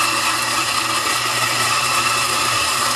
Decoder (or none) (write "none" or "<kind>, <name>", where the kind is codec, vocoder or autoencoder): none